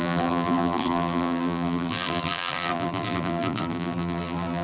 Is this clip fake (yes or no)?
yes